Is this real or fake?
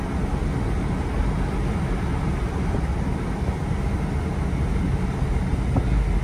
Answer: real